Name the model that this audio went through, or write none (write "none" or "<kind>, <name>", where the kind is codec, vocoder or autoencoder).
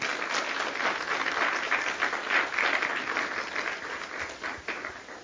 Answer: none